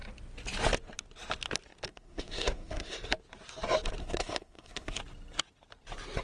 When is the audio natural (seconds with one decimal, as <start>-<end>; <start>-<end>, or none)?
0.0-1.9; 3.0-4.0; 5.0-6.2